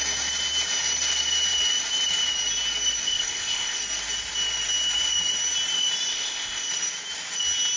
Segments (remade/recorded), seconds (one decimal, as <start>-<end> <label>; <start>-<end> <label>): 0.0-3.0 recorded; 3.0-3.8 remade; 3.8-6.1 recorded; 6.1-6.7 remade; 6.7-7.8 recorded